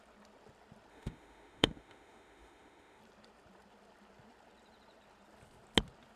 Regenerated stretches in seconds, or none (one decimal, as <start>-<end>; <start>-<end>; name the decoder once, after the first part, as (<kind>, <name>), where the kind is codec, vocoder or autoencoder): 0.9-3.0 (autoencoder, DAC-VAE)